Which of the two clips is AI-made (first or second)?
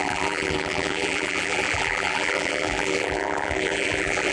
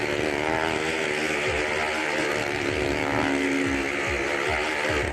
first